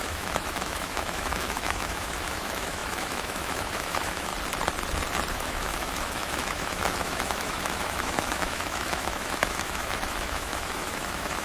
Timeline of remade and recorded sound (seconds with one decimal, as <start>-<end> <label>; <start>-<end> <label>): 0.0-4.3 remade; 4.3-5.3 recorded; 5.3-11.4 remade